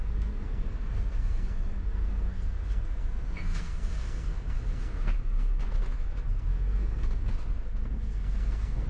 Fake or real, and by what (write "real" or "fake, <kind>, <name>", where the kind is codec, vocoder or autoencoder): fake, codec, SNAC